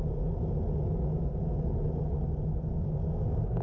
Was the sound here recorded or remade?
recorded